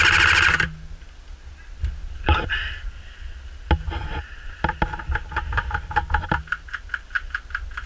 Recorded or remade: recorded